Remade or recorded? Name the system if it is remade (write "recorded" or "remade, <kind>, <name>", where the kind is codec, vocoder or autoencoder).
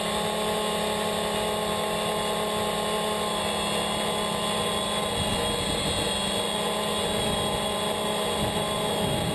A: recorded